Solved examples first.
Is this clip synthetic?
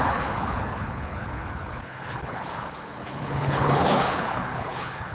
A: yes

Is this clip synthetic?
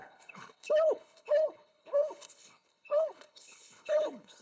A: yes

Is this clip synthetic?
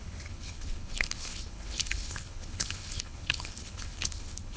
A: yes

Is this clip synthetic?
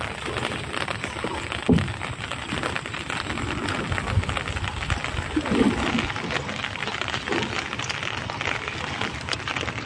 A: no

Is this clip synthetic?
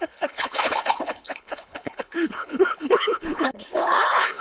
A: yes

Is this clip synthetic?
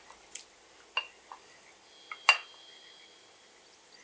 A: no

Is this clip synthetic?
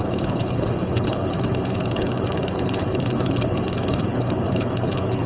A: yes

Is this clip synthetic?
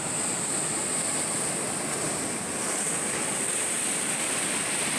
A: no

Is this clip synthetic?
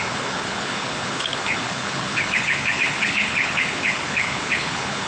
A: yes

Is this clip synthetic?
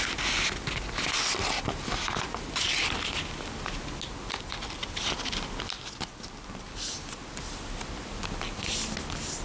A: no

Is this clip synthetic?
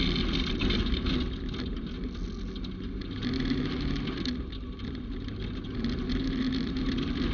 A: no